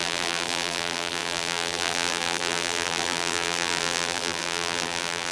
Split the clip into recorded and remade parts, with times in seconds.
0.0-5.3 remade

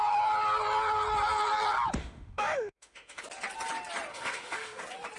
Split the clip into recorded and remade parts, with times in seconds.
0.0-2.0 recorded; 2.0-3.2 remade; 3.2-4.1 recorded; 4.1-4.8 remade; 4.8-5.2 recorded

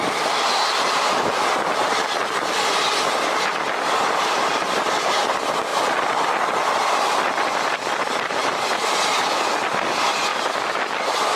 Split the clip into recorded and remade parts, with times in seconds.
0.0-11.4 recorded

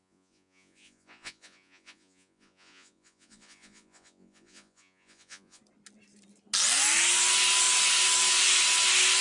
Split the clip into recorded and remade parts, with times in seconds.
0.0-5.6 remade; 5.6-9.2 recorded

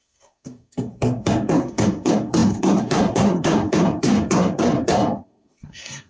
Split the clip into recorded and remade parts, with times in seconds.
0.0-6.1 remade

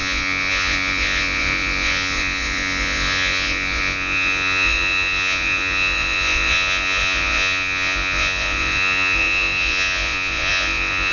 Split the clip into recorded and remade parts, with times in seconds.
0.0-11.1 remade